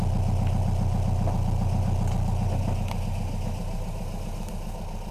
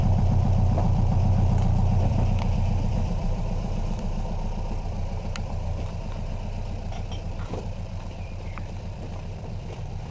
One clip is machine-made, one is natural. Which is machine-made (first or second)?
second